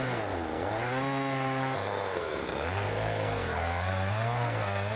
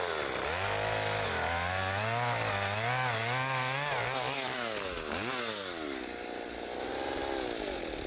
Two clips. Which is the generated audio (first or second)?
first